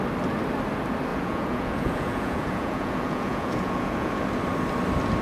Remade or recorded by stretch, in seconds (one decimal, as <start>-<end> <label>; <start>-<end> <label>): 0.0-1.1 recorded; 1.1-4.2 remade; 4.2-5.2 recorded